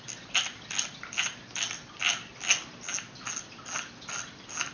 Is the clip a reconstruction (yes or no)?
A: no